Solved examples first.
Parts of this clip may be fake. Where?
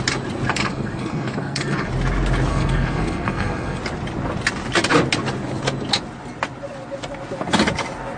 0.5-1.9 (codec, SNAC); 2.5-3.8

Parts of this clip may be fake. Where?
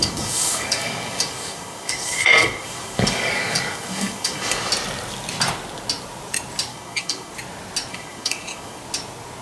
0.0-4.7 (codec, DAC); 6.7-7.3; 7.9-8.8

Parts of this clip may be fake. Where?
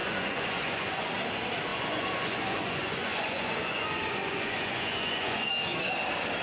0.0-1.1 (vocoder, Vocos); 1.7-5.5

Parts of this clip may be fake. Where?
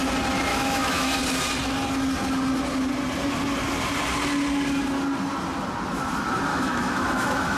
0.5-1.2 (autoencoder, DAC-VAE); 6.5-7.6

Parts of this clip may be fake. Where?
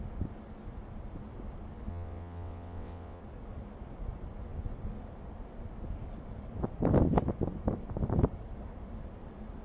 1.9-3.2 (vocoder, WaveNeXt)